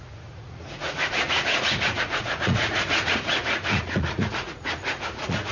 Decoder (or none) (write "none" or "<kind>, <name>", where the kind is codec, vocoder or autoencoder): vocoder, Vocos